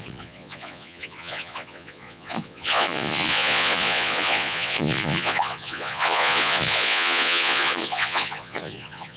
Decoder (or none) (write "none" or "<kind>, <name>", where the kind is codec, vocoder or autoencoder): vocoder, Vocos